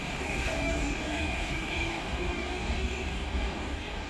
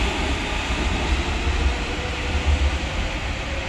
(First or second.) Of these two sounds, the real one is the second